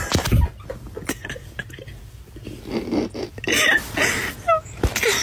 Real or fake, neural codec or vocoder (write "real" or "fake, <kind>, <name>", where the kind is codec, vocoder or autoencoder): real